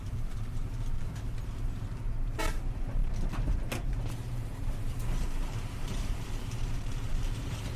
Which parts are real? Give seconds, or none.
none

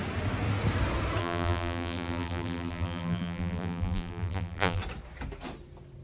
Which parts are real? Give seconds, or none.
0.0-1.2; 4.8-6.0

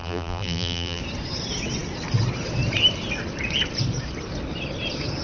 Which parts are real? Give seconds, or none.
1.0-5.2

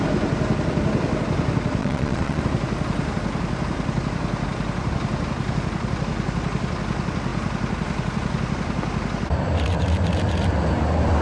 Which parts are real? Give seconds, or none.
0.0-1.8; 2.4-11.2

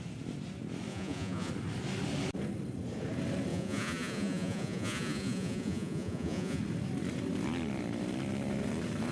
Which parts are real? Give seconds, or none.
0.0-0.9; 1.5-3.5; 6.6-9.1

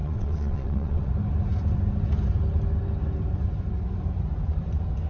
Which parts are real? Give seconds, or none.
1.1-5.1

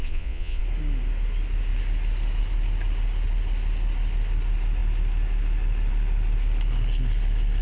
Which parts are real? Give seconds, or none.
0.6-7.6